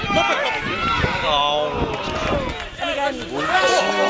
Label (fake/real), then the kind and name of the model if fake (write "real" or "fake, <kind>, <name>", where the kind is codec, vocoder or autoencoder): real